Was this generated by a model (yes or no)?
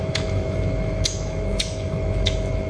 yes